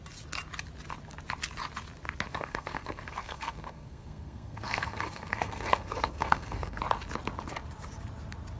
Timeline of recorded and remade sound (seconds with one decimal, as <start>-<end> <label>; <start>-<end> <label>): 0.0-2.3 recorded; 2.3-6.8 remade; 6.8-8.6 recorded